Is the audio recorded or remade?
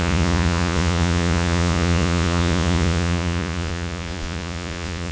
remade